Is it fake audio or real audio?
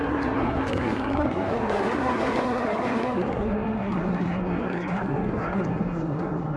fake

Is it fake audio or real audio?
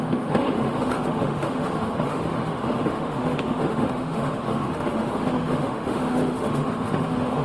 fake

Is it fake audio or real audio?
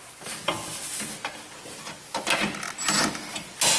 real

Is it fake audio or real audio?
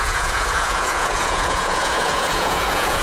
fake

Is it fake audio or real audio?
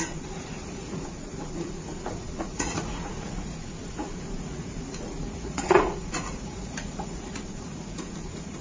fake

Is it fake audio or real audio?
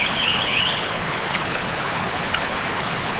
fake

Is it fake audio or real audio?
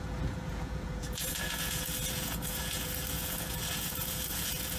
fake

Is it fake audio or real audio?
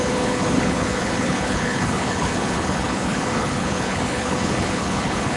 fake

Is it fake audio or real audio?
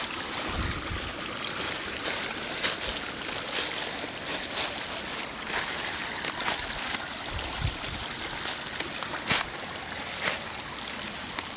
real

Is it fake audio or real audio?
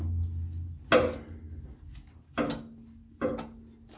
real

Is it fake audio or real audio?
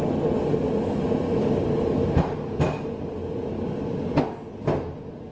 real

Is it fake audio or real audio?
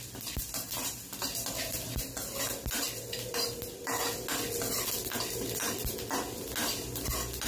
real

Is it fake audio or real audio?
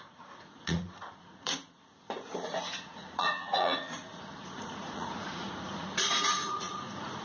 fake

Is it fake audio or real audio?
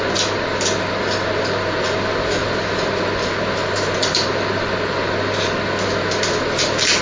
real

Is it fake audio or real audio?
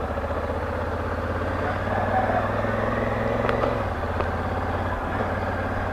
real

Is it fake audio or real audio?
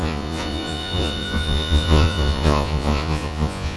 fake